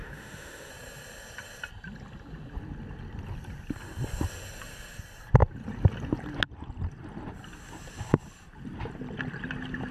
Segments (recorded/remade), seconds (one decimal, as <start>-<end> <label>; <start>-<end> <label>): 0.0-0.7 remade; 0.7-9.9 recorded